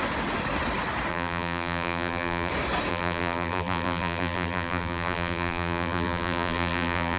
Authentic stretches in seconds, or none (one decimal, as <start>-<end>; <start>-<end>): 0.0-1.1; 2.5-2.9